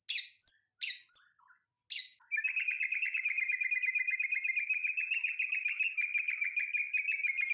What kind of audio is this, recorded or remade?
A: recorded